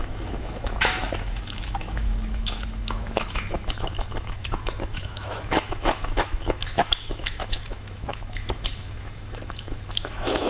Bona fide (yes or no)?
no